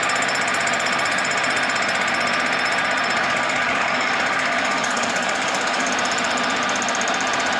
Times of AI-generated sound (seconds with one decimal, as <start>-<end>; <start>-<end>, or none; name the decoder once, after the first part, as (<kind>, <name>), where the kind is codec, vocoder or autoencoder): 3.2-5.9 (codec, DAC)